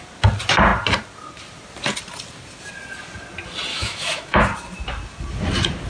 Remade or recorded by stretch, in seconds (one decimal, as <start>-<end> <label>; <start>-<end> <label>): 0.0-3.7 recorded; 3.7-4.4 remade; 4.4-5.9 recorded